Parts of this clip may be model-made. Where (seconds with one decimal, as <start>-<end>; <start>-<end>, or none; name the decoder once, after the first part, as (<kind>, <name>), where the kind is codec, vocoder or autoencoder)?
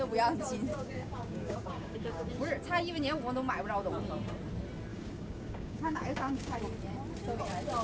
0.7-2.3 (codec, DAC); 4.9-6.6